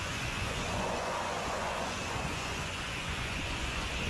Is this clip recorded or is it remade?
remade